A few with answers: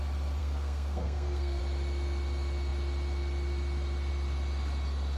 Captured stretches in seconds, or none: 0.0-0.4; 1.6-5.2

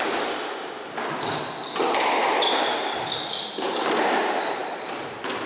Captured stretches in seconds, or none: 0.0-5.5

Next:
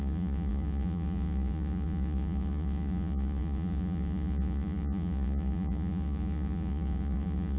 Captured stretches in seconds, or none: none

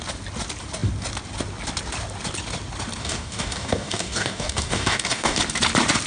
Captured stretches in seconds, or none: 0.0-3.0; 5.4-6.1